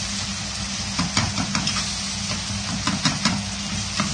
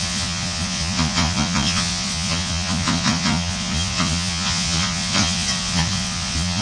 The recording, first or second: first